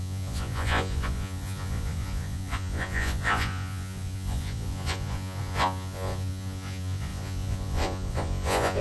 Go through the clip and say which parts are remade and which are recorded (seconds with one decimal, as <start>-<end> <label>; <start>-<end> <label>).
0.0-8.8 remade